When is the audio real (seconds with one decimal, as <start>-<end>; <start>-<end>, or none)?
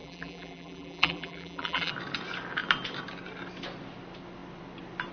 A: 1.9-5.1